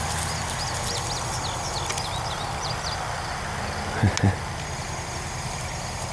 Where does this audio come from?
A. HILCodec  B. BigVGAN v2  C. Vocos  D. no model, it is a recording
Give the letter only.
D